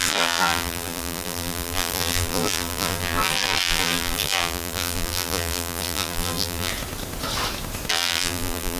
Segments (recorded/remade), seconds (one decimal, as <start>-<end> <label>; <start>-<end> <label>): 0.0-6.7 remade; 6.7-7.9 recorded; 7.9-8.8 remade